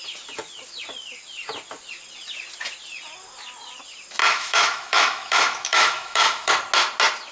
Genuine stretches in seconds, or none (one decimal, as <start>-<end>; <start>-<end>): 0.0-4.2; 6.5-7.3